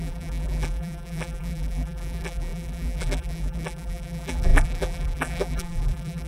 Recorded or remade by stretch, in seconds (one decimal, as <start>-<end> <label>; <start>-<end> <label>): 0.0-6.3 remade